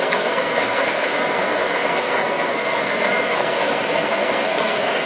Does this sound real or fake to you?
fake